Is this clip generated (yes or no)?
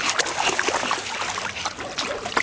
no